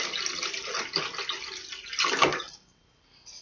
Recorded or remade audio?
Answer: recorded